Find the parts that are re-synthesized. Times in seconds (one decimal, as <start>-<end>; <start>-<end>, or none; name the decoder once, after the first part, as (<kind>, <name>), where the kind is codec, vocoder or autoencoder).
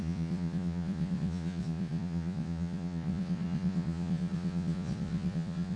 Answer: 0.0-5.8 (vocoder, Vocos)